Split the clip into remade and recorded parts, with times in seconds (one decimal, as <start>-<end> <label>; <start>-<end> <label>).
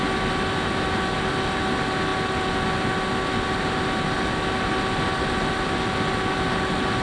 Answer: 0.0-7.0 recorded